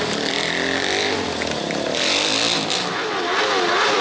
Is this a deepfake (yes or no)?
yes